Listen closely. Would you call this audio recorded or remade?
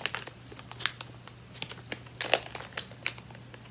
recorded